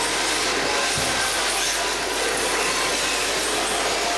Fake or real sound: real